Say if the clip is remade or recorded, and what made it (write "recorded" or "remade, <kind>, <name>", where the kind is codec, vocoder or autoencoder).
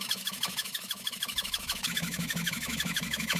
remade, autoencoder, DAC-VAE